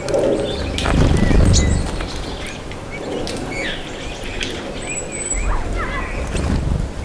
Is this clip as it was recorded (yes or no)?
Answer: yes